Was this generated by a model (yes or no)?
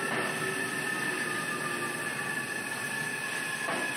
no